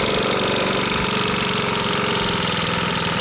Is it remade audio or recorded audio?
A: recorded